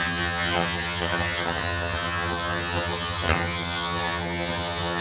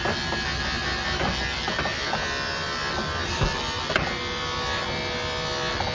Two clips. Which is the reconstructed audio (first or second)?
first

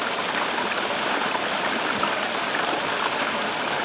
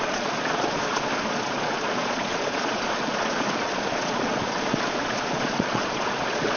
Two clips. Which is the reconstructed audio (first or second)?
second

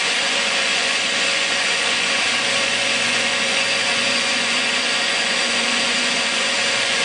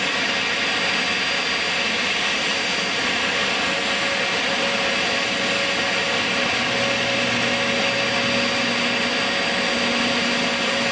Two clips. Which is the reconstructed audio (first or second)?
first